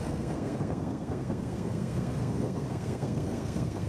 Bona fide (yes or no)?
no